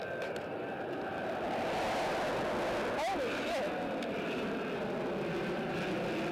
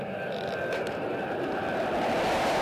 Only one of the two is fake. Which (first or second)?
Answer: second